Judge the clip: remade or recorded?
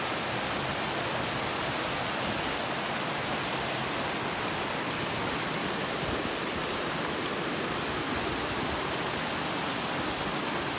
recorded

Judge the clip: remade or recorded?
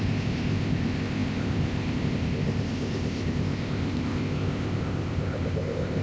remade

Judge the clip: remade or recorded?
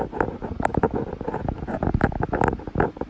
recorded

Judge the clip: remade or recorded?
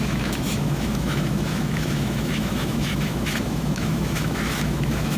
remade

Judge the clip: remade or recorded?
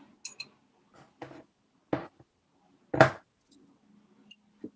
recorded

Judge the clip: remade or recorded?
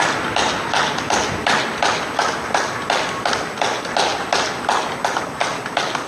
recorded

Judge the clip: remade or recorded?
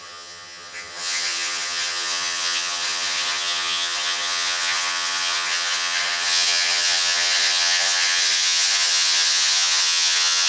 remade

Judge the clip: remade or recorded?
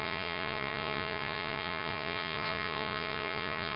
remade